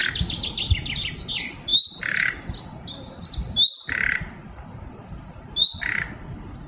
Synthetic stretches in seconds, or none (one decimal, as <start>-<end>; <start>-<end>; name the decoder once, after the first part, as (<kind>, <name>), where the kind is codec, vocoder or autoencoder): none

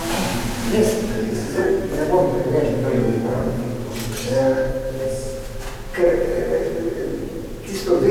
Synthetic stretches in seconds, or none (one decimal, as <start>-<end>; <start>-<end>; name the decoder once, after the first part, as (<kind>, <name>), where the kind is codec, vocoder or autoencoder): 1.2-1.8 (codec, SNAC); 3.0-3.7; 4.3-4.9

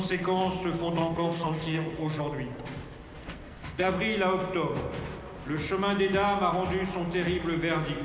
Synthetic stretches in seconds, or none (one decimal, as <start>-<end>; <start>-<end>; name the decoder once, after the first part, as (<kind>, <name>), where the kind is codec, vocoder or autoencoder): 1.0-2.2 (codec, SNAC); 3.2-3.9

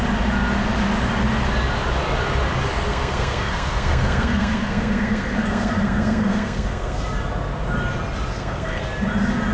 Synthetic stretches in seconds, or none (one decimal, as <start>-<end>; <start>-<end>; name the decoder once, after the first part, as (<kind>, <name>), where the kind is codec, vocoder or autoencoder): 2.9-7.0 (codec, SNAC); 8.3-8.8

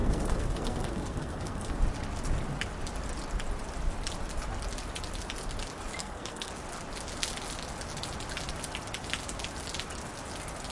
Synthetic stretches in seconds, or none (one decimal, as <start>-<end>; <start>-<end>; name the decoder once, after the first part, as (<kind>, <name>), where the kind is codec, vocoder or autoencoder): 0.0-1.8 (codec, SNAC); 6.0-6.5

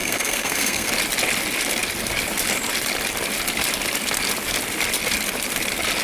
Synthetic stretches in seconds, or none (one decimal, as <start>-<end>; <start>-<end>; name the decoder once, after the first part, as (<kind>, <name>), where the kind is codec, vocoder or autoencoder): 0.0-0.9 (codec, SNAC)

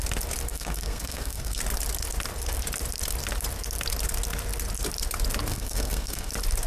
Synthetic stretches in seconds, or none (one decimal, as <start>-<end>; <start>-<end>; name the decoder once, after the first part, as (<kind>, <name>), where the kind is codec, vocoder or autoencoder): 0.5-1.6 (codec, SNAC); 5.5-6.3